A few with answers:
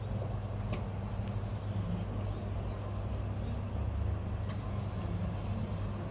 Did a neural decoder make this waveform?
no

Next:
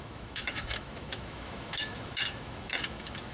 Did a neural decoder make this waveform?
yes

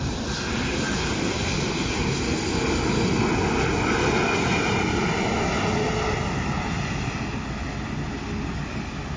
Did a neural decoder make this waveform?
no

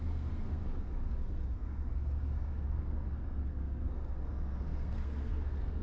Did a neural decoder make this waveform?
yes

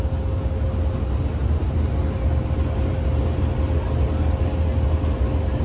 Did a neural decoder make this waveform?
no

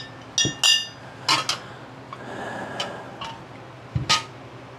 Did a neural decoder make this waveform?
no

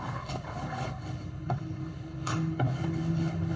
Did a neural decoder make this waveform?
yes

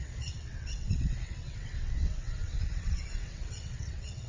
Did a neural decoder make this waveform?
yes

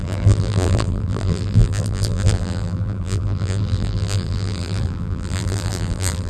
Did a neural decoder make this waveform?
yes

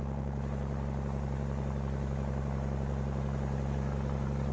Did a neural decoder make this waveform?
yes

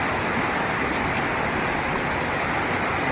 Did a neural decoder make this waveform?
no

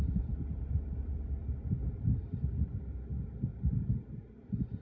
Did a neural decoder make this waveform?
no